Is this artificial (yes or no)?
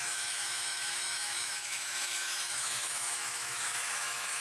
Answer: yes